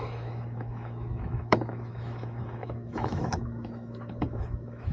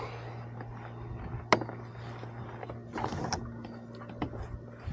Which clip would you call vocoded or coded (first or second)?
first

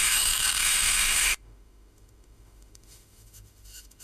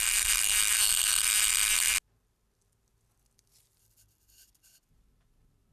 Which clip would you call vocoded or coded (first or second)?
first